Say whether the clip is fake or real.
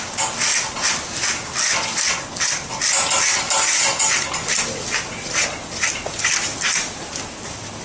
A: real